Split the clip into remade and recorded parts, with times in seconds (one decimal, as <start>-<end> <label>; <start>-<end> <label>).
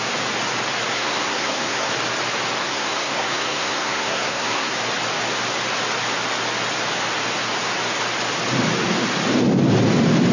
0.0-0.9 recorded; 0.9-1.9 remade; 1.9-2.6 recorded; 2.6-4.7 remade; 4.7-10.3 recorded